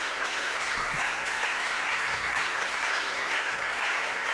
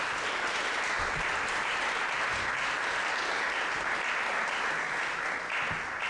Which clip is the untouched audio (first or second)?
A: second